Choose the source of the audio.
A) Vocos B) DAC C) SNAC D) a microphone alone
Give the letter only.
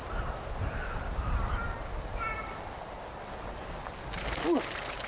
D